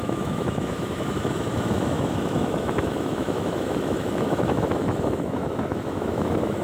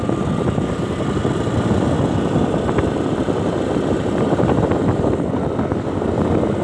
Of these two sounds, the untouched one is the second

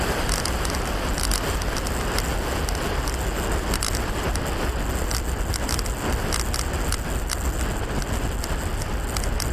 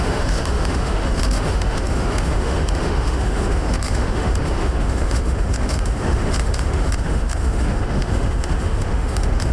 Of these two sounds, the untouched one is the first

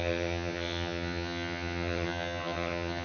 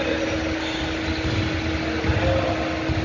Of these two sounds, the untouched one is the second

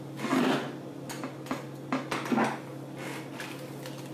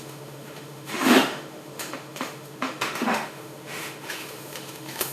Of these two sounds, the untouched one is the first